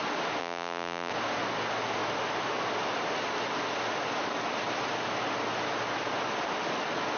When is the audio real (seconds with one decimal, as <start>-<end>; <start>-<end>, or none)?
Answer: 0.0-0.4; 1.1-7.2